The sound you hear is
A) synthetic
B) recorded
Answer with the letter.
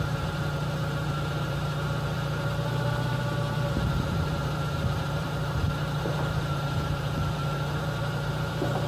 A